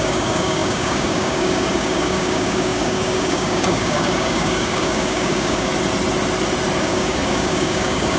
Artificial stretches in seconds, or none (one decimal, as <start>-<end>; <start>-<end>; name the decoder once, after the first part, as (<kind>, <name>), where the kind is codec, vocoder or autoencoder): 0.0-5.7 (codec, DAC); 6.8-8.2